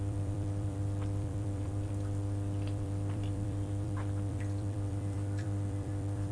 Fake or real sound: fake